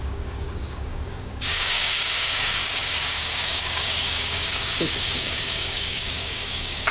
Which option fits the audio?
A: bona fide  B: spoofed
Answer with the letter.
B